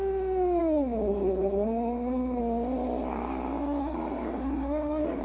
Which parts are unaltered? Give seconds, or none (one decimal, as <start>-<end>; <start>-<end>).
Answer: 0.0-0.6; 2.4-3.8